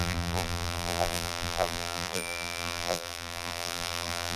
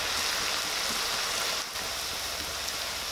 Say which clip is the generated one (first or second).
first